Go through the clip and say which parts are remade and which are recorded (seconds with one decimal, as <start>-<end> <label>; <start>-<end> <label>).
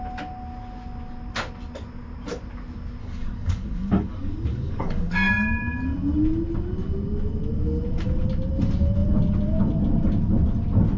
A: 0.0-3.0 recorded; 3.0-5.3 remade; 5.3-11.0 recorded